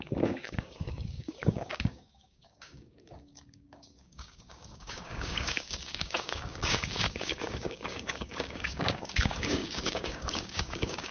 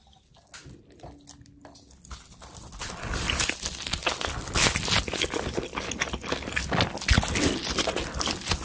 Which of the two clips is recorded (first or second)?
second